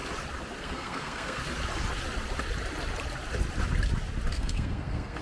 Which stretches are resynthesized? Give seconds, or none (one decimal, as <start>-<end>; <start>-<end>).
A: 0.6-1.4; 4.3-5.2